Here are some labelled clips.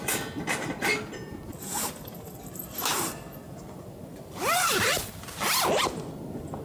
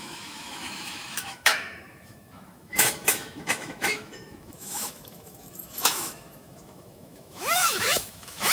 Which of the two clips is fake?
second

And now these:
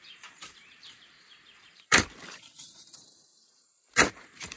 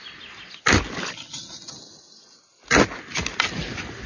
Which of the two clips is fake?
first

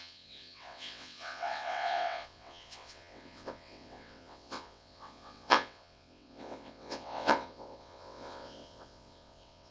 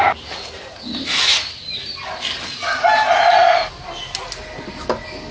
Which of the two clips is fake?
first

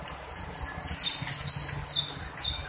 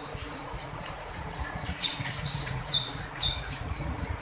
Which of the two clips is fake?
second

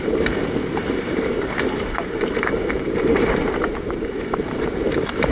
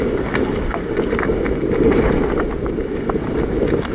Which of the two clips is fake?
first